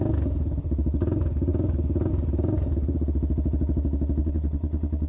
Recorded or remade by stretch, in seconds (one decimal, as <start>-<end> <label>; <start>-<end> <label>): 0.0-4.2 recorded; 4.2-5.1 remade